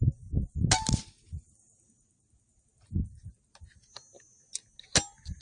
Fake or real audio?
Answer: real